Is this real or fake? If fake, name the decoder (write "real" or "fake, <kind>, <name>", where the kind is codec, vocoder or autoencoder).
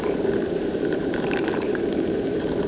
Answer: fake, vocoder, BigVGAN v2